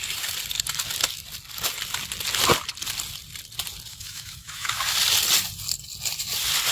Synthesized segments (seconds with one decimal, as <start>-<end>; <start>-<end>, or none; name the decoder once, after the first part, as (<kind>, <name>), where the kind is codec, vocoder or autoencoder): 3.9-4.8 (autoencoder, DAC-VAE)